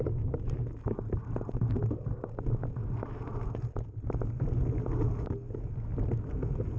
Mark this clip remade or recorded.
recorded